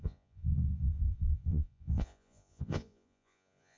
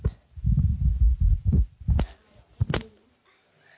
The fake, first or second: first